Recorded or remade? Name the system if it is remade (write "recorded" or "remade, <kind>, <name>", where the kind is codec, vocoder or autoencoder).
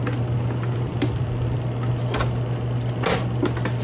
recorded